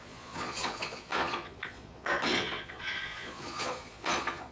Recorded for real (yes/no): no